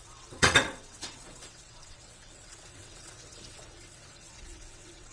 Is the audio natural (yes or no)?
no